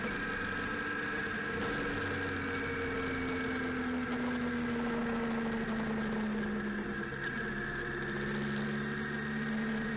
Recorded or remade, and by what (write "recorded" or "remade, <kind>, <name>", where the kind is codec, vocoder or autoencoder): recorded